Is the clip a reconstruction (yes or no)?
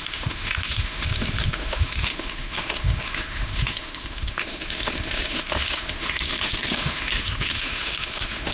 yes